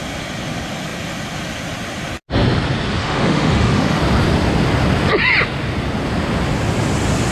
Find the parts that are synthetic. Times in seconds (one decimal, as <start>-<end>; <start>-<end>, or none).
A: 3.0-4.0